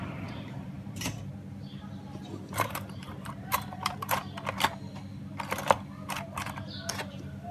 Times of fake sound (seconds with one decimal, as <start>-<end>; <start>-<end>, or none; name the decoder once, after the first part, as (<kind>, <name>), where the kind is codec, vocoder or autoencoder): 0.0-1.3 (vocoder, BigVGAN v2); 2.2-4.2; 6.9-7.5